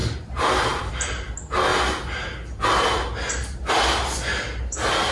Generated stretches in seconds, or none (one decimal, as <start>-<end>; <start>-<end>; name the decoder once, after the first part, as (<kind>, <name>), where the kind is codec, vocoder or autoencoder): 0.0-0.9 (vocoder, BigVGAN v2)